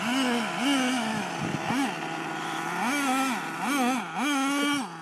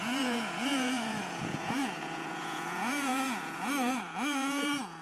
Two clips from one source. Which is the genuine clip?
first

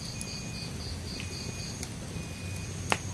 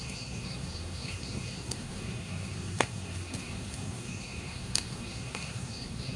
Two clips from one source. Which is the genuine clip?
first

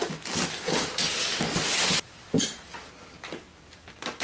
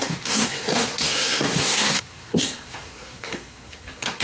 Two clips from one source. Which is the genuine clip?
first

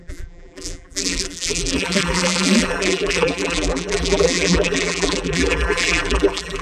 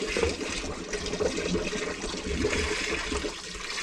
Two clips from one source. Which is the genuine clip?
second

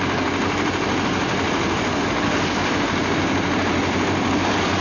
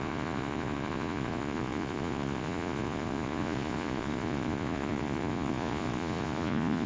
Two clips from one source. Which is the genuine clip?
first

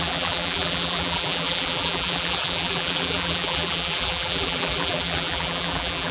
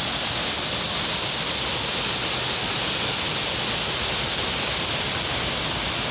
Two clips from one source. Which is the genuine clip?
second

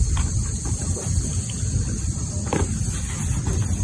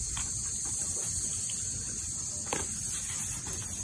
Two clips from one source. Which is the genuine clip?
second